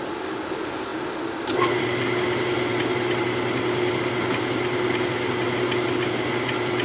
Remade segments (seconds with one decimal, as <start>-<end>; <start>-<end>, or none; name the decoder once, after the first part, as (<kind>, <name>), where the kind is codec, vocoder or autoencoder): none